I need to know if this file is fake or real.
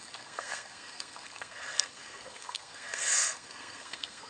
fake